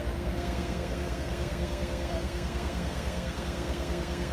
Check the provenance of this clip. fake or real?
fake